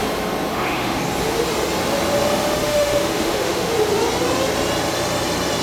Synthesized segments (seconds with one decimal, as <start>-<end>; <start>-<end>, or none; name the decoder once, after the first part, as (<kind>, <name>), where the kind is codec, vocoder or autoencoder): 0.5-1.0 (autoencoder, DAC-VAE); 2.6-3.7